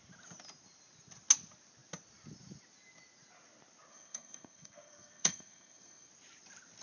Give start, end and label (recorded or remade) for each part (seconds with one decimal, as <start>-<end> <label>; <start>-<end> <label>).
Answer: 0.0-3.9 recorded; 3.9-6.1 remade; 6.1-6.8 recorded